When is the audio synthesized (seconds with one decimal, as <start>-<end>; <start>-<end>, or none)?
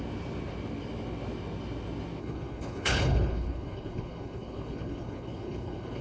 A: 2.2-6.0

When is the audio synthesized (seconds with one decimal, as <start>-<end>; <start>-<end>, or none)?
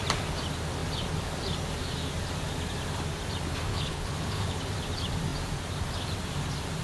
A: 3.7-4.7